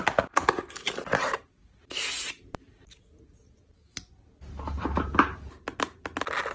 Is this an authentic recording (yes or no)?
yes